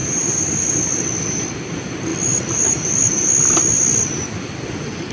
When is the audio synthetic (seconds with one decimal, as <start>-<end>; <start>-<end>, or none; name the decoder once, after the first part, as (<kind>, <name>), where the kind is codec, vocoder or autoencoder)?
0.0-0.8 (vocoder, BigVGAN v2); 2.1-3.0